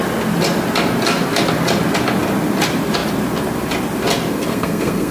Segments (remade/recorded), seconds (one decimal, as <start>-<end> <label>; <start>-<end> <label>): 0.0-4.3 recorded; 4.3-5.1 remade